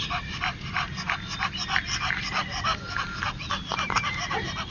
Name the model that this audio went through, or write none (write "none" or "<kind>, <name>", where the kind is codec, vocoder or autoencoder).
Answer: none